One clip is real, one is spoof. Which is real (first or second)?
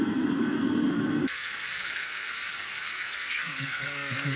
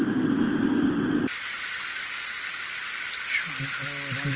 second